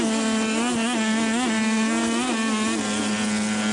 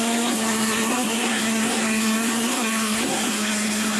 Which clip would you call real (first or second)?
first